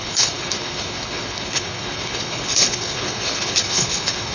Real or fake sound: fake